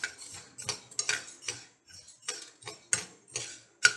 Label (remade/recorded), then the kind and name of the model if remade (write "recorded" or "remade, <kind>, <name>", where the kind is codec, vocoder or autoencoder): recorded